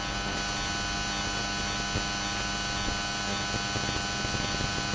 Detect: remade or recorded recorded